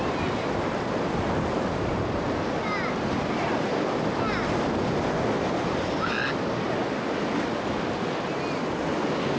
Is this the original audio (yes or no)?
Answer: yes